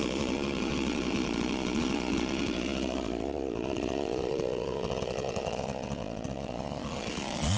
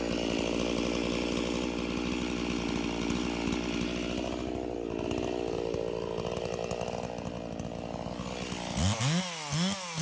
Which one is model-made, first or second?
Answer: first